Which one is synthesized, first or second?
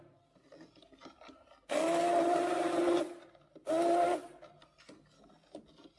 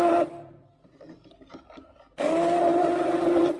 second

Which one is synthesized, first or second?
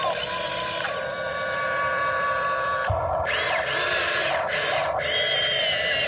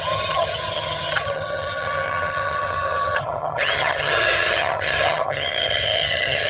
second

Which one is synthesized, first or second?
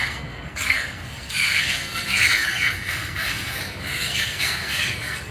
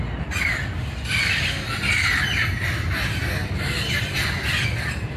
first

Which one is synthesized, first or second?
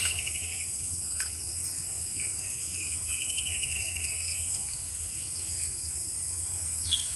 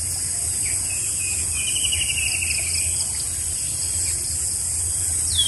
first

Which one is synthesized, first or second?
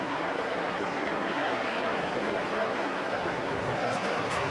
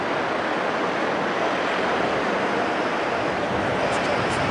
first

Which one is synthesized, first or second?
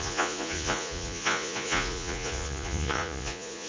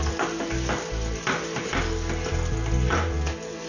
first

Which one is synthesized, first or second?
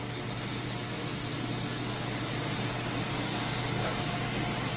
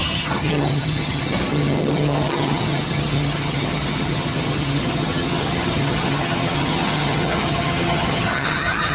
second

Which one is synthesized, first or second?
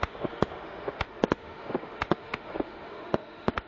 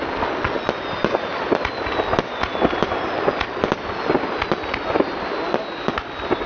first